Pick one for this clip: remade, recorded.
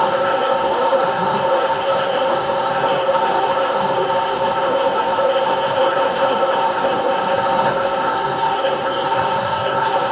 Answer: remade